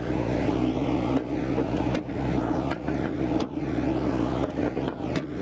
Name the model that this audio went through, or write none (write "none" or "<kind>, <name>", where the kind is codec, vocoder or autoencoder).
vocoder, Vocos